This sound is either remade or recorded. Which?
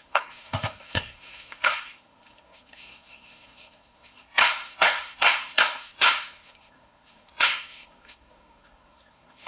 remade